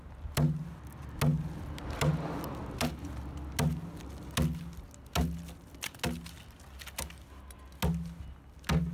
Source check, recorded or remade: recorded